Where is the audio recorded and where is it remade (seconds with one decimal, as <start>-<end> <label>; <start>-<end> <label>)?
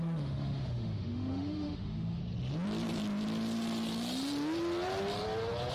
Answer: 0.0-2.2 remade; 2.2-5.7 recorded